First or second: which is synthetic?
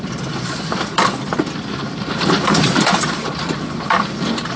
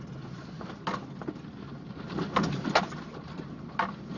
first